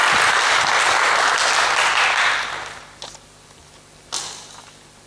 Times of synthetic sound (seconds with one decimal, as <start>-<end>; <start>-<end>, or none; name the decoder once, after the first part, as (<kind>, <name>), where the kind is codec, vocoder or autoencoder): none